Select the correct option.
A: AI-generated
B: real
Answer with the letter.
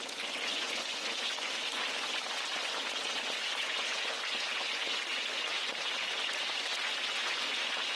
A